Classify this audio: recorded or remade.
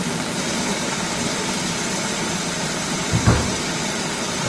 recorded